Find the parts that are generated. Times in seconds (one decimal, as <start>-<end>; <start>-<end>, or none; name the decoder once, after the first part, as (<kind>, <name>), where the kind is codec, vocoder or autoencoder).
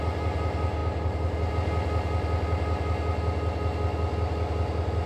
none